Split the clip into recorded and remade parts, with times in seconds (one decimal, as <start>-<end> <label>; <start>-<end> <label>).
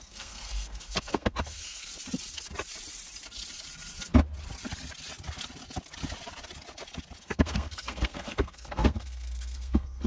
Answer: 0.0-1.9 remade; 1.9-7.2 recorded; 7.2-10.1 remade